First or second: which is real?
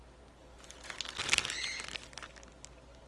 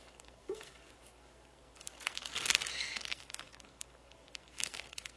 first